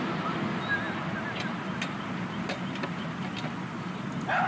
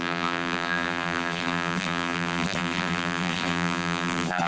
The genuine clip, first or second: first